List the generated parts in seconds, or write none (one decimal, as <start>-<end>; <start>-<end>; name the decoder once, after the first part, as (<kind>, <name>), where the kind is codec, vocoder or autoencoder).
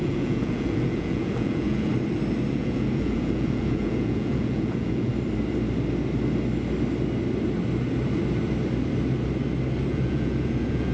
0.0-1.9 (vocoder, Vocos); 2.5-5.1; 9.9-10.9